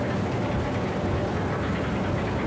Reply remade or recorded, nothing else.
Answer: recorded